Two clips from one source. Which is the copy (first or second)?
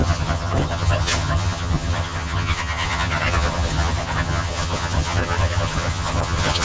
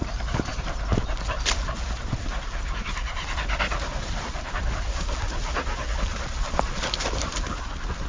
first